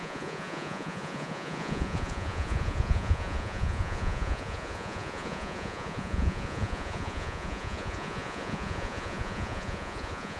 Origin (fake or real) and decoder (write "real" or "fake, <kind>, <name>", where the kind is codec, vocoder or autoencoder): fake, vocoder, Vocos